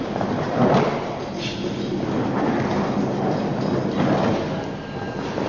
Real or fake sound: real